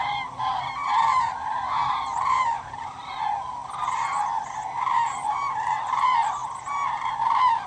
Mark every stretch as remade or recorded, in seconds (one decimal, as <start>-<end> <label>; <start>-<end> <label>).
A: 0.0-3.6 remade; 3.6-4.9 recorded; 4.9-6.2 remade; 6.2-7.2 recorded; 7.2-7.7 remade